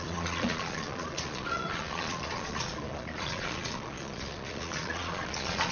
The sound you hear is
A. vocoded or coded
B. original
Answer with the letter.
A